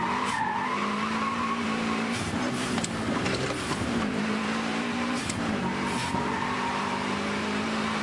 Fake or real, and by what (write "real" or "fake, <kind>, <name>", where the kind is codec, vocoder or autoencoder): fake, vocoder, BigVGAN v2